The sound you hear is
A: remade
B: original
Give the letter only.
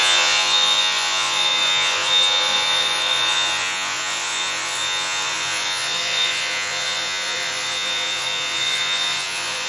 A